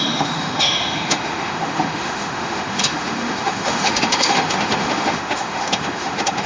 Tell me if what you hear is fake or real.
fake